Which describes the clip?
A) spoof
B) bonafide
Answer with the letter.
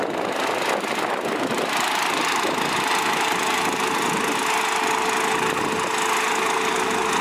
B